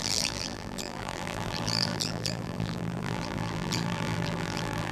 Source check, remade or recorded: remade